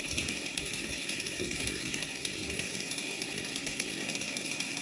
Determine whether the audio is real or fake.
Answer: fake